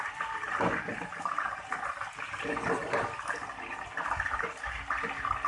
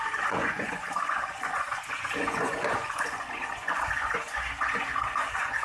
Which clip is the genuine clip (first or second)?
first